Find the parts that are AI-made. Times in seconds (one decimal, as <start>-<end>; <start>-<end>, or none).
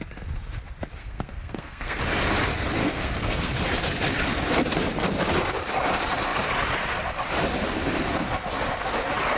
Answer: 1.0-2.0; 2.8-3.5